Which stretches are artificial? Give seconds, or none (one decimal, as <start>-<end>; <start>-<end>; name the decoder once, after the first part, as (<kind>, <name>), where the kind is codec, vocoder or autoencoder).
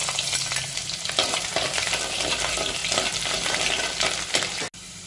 0.6-2.8 (vocoder, BigVGAN v2)